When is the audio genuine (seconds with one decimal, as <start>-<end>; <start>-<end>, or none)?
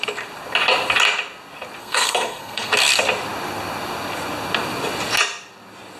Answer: 0.0-1.8; 2.7-6.0